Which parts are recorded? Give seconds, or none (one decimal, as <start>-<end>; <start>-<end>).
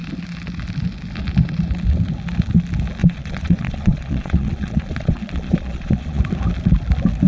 0.0-3.0; 6.2-7.3